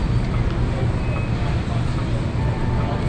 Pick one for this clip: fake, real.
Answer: real